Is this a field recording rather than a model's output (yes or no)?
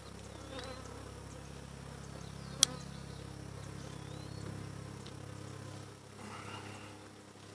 yes